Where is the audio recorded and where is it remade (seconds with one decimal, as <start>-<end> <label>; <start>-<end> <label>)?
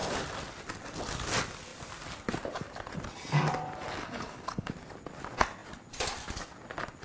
0.0-4.0 recorded; 4.0-4.7 remade; 4.7-7.0 recorded